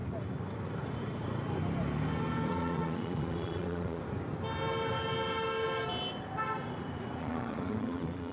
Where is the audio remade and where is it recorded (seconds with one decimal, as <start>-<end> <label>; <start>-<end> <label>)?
0.0-2.5 recorded; 2.5-4.0 remade; 4.0-7.2 recorded; 7.2-8.3 remade